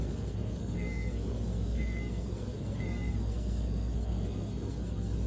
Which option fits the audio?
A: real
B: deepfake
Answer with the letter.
B